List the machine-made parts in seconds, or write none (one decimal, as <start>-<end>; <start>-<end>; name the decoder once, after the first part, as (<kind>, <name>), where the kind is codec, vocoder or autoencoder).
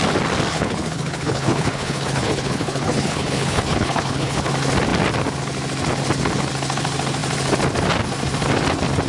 0.5-4.5 (codec, HILCodec)